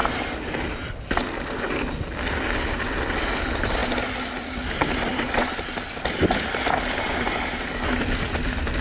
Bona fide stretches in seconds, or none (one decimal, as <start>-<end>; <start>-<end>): 0.0-8.8